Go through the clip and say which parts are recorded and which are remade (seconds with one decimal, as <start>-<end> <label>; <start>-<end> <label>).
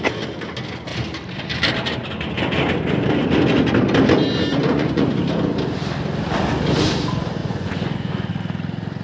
0.0-4.6 recorded; 4.6-5.2 remade; 5.2-7.4 recorded; 7.4-8.3 remade; 8.3-9.0 recorded